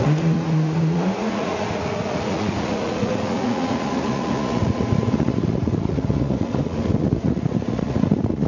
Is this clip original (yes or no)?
no